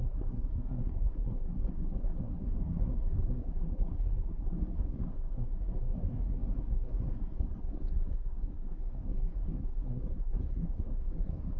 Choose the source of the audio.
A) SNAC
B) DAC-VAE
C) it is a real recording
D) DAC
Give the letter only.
A